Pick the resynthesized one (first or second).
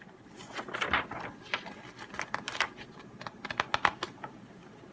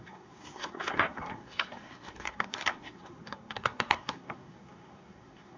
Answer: second